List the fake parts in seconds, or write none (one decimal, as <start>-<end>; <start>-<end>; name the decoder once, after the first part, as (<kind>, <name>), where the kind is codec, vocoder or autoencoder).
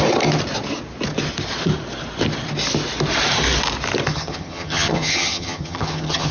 4.1-6.3 (vocoder, HiFi-GAN)